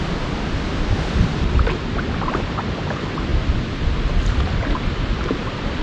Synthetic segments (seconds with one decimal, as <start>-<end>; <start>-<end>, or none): 0.0-3.3; 4.3-5.8